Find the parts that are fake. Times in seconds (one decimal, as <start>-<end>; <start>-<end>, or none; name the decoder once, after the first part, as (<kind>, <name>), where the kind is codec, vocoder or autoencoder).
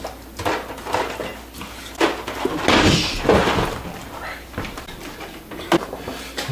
4.0-5.9 (vocoder, BigVGAN v2)